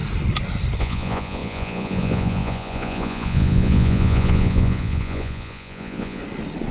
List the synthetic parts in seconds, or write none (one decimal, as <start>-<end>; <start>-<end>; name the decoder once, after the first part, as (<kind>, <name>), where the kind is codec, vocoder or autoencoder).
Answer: 0.8-6.2 (vocoder, Vocos)